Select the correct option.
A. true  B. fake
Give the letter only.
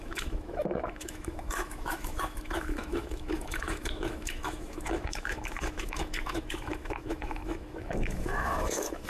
B